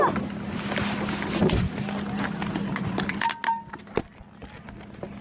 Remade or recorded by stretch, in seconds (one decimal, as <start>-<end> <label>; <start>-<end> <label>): 0.0-5.2 recorded